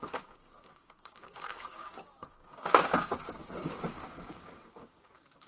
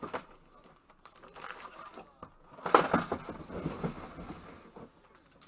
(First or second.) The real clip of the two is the second